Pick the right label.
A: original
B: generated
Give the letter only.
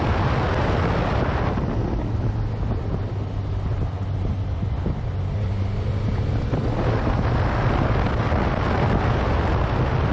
A